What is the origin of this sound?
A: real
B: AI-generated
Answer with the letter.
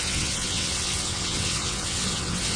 B